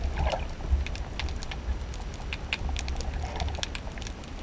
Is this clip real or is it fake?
real